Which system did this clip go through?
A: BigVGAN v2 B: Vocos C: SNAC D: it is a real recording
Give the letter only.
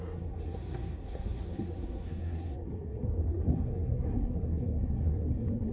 C